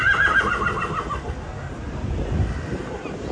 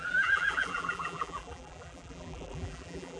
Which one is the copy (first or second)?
second